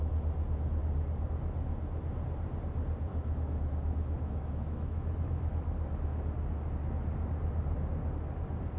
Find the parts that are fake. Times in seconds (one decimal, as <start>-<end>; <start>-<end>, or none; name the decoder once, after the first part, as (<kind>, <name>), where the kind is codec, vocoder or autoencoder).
3.1-5.5 (autoencoder, DAC-VAE)